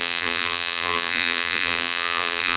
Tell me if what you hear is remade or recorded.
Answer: remade